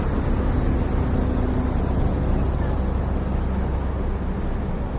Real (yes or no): yes